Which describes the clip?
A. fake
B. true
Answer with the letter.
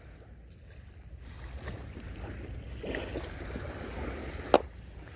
B